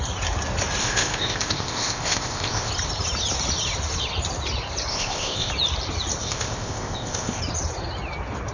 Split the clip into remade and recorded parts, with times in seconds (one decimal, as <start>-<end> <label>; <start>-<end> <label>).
0.0-0.8 recorded; 0.8-2.7 remade; 2.7-4.9 recorded; 4.9-5.5 remade; 5.5-6.2 recorded; 6.2-7.4 remade; 7.4-8.5 recorded